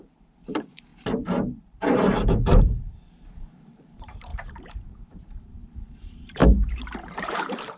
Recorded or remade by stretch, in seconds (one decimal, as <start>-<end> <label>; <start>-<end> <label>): 0.0-7.8 remade